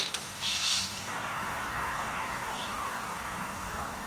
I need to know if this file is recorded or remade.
remade